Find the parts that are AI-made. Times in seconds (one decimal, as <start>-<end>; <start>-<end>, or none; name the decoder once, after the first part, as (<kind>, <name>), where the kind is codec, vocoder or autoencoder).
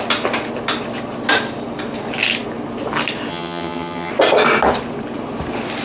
3.3-4.1 (vocoder, HiFi-GAN)